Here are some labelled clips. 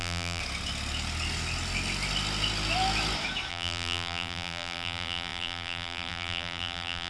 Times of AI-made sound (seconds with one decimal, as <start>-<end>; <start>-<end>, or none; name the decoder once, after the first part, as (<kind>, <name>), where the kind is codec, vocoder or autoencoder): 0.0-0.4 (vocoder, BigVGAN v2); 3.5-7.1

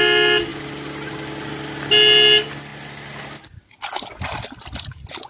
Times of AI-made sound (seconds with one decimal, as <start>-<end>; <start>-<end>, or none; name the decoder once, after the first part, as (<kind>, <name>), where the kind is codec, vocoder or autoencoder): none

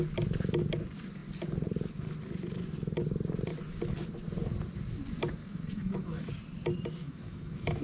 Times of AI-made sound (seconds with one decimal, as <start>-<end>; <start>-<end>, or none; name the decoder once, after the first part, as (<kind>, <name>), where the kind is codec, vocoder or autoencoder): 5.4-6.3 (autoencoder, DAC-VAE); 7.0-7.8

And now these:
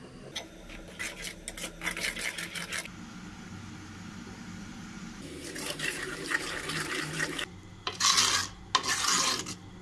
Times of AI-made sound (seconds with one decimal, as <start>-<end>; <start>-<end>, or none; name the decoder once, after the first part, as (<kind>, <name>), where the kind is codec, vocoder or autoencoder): 4.7-8.0 (vocoder, BigVGAN v2)

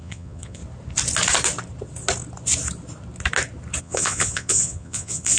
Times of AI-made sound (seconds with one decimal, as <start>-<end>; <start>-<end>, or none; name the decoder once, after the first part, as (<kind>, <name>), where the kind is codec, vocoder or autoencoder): 0.0-0.6 (vocoder, Vocos); 3.8-5.4

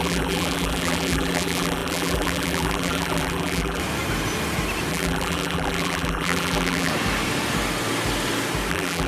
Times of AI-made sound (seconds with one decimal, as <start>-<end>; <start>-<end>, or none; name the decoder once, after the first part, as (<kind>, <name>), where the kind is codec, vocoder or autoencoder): 0.0-3.8 (vocoder, BigVGAN v2); 4.9-6.9; 8.7-9.1

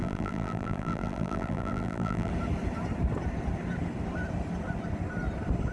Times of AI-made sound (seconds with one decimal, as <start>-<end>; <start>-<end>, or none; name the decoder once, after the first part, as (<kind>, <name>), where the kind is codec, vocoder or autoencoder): 0.0-2.3 (vocoder, BigVGAN v2)